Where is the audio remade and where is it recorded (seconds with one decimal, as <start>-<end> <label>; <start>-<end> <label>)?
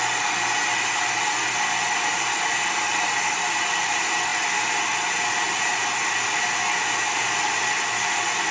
0.0-8.5 recorded